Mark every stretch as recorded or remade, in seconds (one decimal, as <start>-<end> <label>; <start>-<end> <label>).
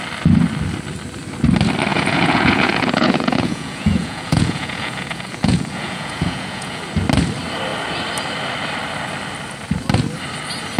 0.0-1.9 recorded; 1.9-6.8 remade; 6.8-10.8 recorded